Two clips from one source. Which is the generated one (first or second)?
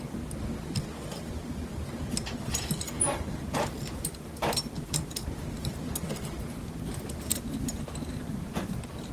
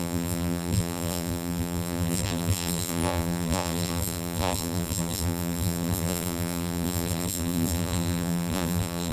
second